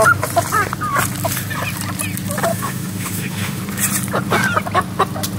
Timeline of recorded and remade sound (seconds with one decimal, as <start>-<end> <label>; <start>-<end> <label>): 0.0-2.5 recorded; 2.5-3.6 remade; 3.6-5.4 recorded